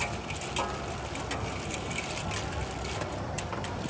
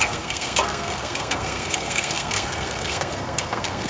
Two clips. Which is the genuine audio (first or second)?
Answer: first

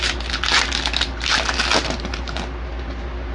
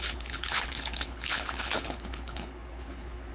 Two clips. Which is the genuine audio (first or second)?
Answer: first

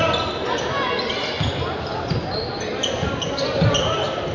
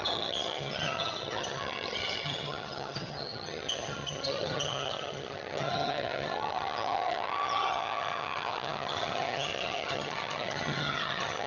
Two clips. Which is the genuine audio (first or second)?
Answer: first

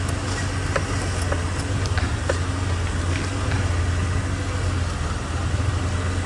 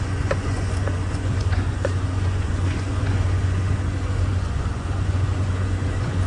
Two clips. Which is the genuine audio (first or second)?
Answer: first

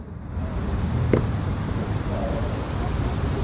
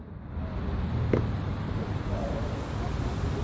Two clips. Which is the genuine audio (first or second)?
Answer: second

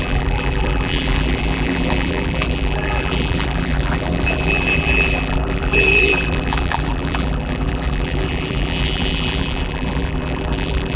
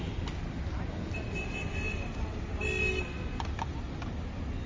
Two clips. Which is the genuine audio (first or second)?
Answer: second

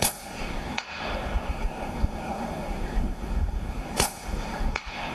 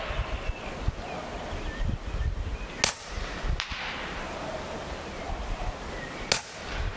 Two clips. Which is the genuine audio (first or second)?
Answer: second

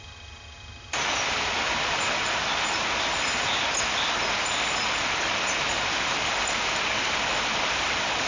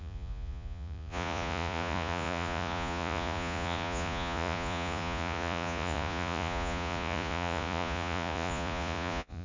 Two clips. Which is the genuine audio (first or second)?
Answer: first